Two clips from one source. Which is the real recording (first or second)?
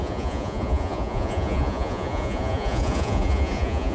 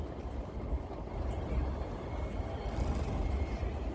second